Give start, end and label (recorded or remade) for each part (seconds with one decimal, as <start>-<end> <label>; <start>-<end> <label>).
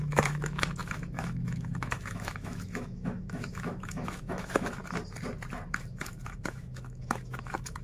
0.0-4.8 remade; 4.8-5.7 recorded; 5.7-7.8 remade